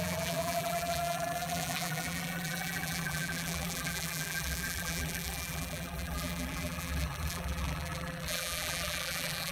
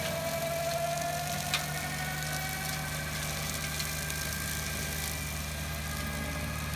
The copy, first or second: first